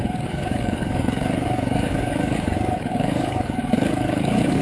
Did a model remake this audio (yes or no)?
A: yes